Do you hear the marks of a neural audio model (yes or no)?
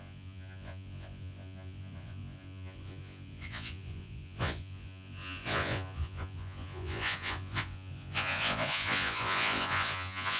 yes